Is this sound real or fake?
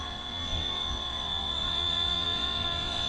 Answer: fake